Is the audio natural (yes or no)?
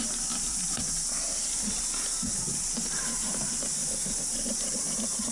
yes